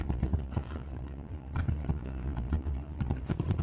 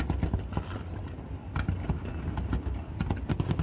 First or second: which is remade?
first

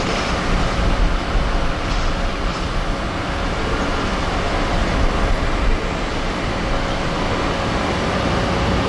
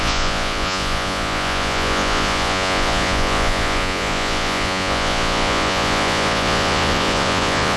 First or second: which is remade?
second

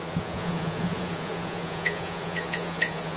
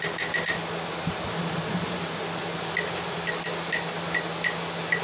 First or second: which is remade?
first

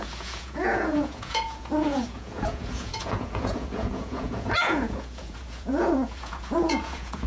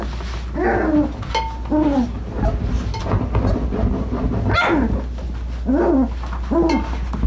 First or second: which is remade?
first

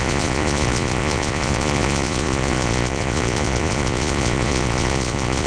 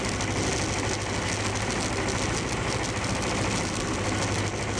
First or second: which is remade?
first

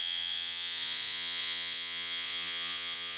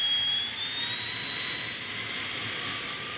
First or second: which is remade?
first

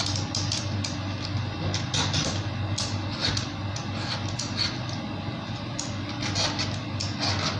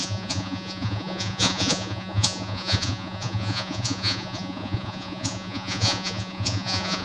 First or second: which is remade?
second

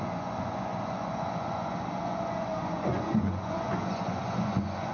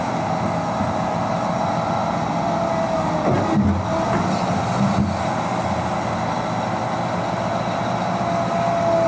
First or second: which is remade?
first